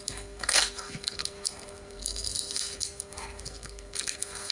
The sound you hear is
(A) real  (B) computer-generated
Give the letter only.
B